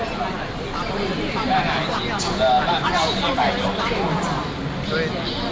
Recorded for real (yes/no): yes